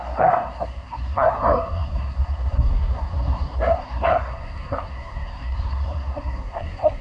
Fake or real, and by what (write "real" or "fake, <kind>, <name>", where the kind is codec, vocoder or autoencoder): fake, codec, SNAC